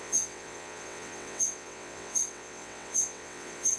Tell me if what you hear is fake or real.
fake